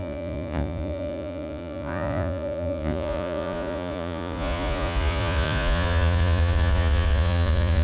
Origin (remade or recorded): remade